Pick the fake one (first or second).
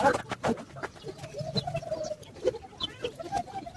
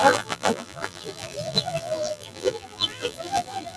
second